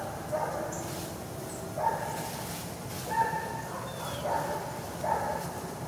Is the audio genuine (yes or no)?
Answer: yes